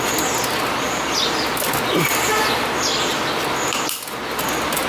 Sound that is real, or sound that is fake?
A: real